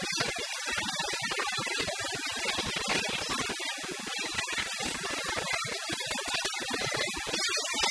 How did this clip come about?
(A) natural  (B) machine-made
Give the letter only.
A